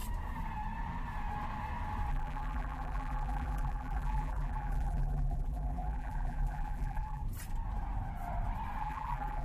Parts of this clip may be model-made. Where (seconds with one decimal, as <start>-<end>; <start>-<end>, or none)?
2.1-7.2; 8.8-9.4